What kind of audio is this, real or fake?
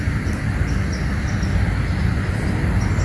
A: real